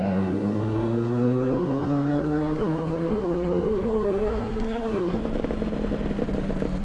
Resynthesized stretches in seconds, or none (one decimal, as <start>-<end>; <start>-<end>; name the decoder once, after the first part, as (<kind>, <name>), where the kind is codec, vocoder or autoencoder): 0.0-5.2 (codec, SNAC)